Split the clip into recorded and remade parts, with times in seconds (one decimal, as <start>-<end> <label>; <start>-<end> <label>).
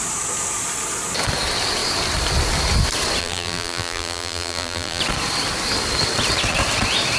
0.0-3.2 recorded; 3.2-5.0 remade; 5.0-7.2 recorded